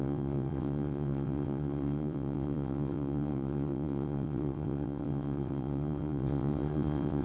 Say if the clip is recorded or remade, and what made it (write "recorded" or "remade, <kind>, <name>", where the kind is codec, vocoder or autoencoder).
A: remade, vocoder, WaveNeXt